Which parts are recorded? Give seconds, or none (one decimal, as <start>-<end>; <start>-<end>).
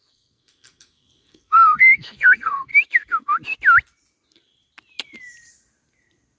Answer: 2.7-6.4